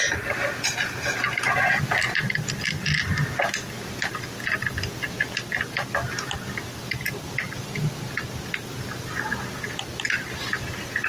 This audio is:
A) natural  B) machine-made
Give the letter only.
A